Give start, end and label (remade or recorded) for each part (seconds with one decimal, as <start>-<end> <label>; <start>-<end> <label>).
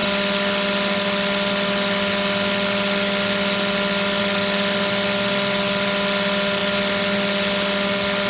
0.0-8.3 recorded